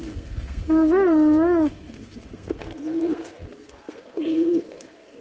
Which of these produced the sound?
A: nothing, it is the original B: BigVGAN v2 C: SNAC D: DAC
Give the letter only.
C